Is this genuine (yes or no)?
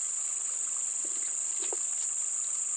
yes